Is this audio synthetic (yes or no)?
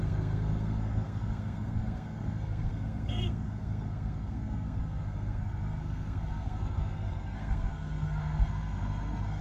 yes